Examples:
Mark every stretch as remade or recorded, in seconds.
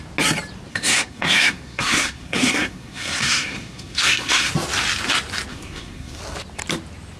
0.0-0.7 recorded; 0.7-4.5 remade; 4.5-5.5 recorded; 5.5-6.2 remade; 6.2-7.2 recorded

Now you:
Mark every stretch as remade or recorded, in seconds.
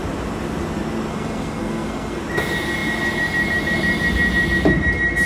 0.0-1.1 recorded; 1.1-2.2 remade; 2.2-5.3 recorded